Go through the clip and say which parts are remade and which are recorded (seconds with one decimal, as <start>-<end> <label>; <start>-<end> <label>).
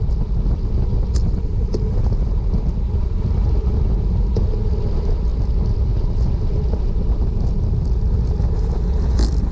0.0-9.5 recorded